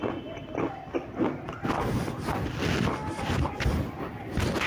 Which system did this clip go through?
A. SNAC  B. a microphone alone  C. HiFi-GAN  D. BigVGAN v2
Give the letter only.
B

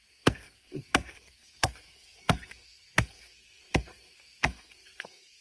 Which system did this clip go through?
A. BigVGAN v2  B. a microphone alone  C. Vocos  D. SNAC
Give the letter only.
D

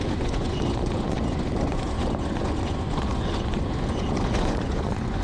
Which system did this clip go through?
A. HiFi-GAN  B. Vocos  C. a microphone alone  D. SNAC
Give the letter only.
B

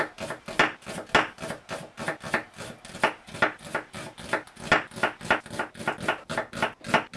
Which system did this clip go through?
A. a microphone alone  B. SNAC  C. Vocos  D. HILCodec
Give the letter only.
A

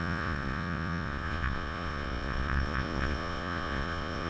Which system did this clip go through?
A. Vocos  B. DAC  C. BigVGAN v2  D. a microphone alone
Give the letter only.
A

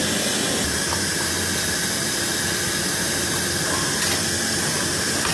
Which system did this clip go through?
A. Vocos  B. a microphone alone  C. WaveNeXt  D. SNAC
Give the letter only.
B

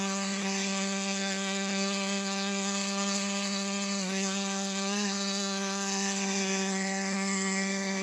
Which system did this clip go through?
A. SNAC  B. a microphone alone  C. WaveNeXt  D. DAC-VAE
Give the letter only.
A